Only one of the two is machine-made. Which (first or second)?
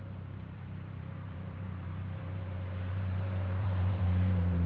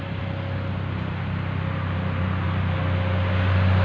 first